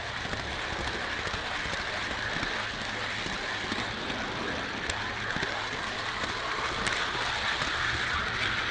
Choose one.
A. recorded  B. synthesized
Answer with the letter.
A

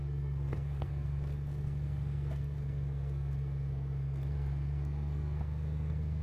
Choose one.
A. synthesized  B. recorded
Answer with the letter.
A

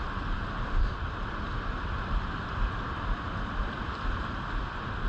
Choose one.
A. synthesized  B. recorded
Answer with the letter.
B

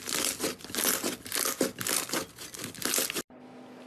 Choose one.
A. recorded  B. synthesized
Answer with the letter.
A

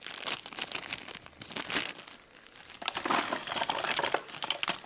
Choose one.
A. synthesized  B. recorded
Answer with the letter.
B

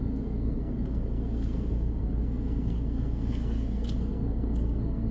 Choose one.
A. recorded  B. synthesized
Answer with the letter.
B